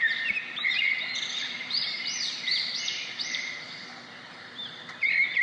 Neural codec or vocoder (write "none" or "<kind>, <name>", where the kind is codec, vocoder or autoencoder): vocoder, BigVGAN v2